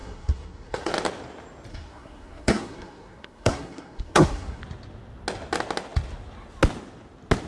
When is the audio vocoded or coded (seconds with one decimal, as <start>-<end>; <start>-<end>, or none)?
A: 0.0-0.9; 1.7-4.6

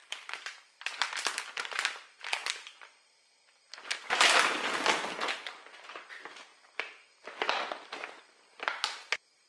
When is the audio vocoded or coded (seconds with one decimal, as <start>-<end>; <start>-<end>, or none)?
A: none

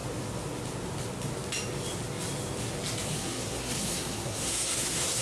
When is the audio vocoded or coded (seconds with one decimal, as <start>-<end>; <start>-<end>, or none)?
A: 3.1-5.2

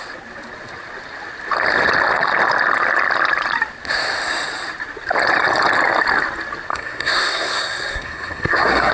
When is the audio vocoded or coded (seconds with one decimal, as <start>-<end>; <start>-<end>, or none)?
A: 6.7-8.9

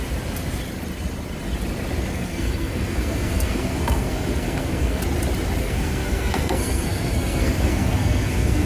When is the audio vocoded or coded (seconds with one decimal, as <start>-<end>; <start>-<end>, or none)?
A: 2.1-5.0; 5.6-8.7

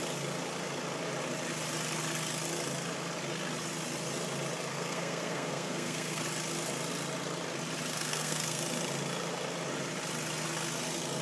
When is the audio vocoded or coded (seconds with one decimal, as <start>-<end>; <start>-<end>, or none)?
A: 4.7-6.2; 7.9-8.6

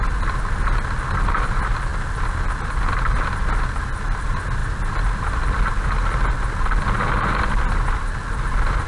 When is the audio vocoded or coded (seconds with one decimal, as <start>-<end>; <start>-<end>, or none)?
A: none

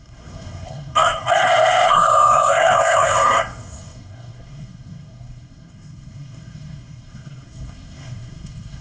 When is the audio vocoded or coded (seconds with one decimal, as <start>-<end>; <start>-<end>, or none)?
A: 0.0-8.8